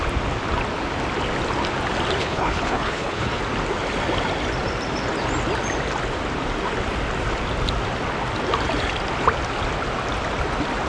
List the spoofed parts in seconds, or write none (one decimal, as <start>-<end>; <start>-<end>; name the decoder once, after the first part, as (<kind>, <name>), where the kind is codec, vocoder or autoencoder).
2.2-3.4 (codec, HILCodec)